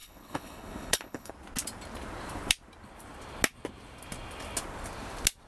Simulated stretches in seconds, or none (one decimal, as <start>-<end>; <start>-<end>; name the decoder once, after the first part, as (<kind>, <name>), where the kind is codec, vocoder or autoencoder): 0.0-1.3 (codec, HILCodec)

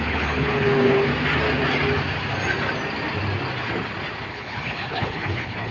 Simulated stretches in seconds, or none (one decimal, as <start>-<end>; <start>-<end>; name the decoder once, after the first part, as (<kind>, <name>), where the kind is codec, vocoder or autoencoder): 0.0-1.1 (codec, HILCodec); 4.3-5.7

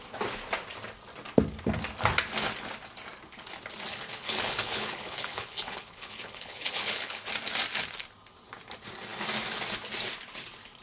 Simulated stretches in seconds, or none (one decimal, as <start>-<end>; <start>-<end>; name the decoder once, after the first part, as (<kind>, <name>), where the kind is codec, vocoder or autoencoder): 3.9-7.3 (codec, HILCodec)

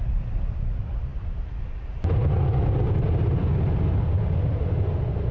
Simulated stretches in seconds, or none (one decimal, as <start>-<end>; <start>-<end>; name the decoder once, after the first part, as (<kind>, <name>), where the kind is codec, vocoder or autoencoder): none

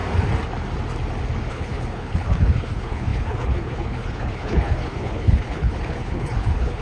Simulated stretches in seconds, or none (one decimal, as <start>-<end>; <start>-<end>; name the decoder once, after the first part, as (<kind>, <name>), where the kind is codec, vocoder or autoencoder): 1.5-6.8 (codec, HILCodec)

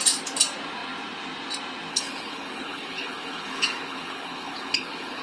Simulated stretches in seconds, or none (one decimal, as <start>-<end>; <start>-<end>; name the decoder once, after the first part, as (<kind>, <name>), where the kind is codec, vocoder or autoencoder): 1.9-5.2 (codec, HILCodec)

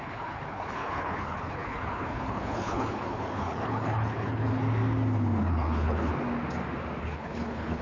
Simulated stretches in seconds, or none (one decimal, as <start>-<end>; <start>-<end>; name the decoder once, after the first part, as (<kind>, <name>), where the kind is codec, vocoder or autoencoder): 0.0-4.6 (codec, HILCodec); 5.4-6.1; 7.0-7.8